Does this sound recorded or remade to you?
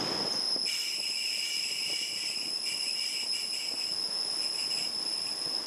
recorded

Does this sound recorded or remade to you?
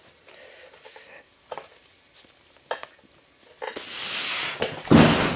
recorded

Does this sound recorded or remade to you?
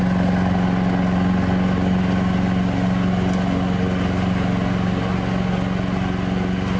recorded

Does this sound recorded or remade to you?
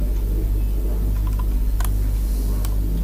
recorded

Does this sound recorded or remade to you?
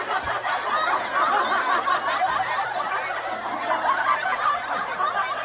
recorded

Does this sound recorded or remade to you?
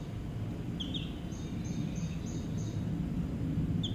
recorded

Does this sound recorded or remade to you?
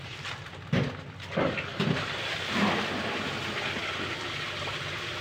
recorded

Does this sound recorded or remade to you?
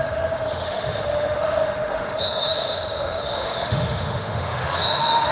remade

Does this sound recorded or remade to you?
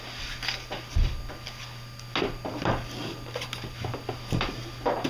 recorded